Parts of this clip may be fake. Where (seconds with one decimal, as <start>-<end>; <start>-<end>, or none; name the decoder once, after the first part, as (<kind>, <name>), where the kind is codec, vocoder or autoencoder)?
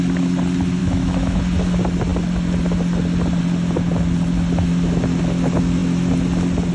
0.8-1.4 (autoencoder, DAC-VAE)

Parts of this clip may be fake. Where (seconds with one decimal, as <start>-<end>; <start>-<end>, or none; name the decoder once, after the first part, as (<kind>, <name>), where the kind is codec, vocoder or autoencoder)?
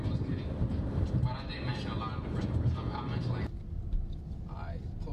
none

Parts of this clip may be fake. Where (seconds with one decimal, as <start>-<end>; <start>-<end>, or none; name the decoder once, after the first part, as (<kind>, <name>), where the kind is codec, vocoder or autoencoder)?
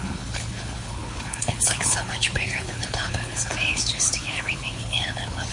0.0-5.5 (codec, HILCodec)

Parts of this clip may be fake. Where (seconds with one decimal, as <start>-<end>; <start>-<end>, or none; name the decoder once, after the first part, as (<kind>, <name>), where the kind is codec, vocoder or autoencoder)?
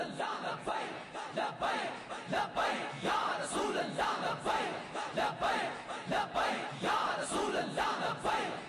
none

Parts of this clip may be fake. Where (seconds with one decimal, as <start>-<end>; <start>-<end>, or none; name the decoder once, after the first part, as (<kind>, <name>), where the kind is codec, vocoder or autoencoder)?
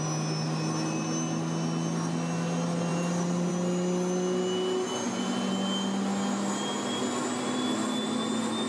2.9-3.5 (vocoder, BigVGAN v2)